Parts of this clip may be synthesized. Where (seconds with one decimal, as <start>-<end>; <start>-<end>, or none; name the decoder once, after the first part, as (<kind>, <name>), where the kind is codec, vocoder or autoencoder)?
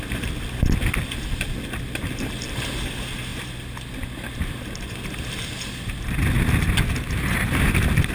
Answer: none